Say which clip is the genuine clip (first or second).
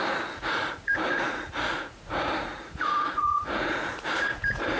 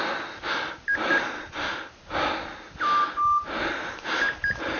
second